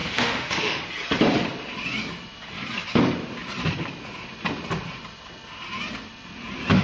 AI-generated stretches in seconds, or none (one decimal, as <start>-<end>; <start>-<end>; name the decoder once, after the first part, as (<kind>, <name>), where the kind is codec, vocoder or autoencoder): 0.0-0.8 (autoencoder, DAC-VAE)